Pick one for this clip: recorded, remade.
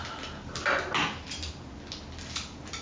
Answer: recorded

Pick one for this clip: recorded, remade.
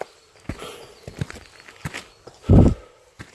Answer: recorded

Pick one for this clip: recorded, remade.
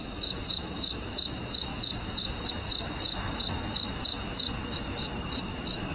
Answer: remade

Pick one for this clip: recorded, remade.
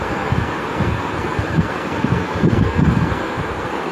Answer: remade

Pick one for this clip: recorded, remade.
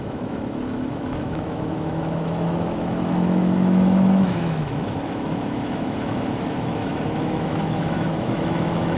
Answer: remade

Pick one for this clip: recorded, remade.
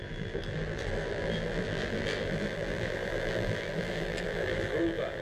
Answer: remade